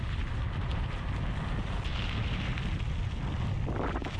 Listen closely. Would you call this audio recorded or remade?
recorded